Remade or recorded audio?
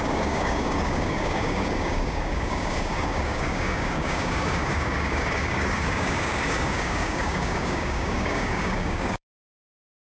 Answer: remade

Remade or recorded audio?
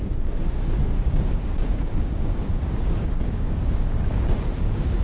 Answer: remade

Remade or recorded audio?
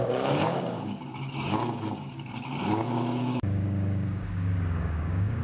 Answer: remade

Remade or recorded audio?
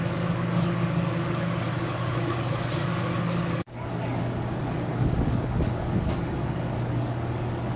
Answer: remade